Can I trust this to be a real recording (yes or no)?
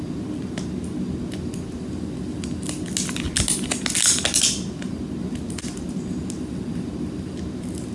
yes